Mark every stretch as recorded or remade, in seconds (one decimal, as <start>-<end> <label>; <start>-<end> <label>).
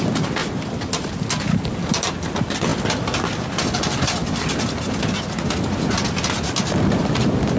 0.0-7.6 recorded